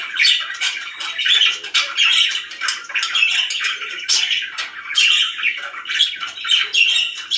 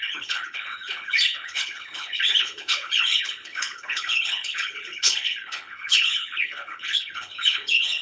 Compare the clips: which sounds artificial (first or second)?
second